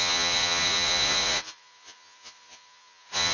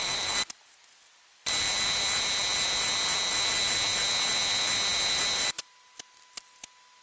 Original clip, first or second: second